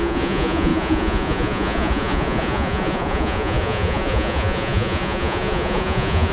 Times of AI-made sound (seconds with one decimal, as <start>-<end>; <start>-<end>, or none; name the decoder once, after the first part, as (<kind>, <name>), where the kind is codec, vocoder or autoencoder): 0.0-6.3 (vocoder, Vocos)